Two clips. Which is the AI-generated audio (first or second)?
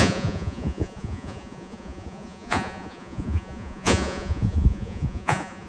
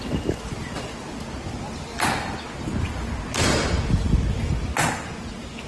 first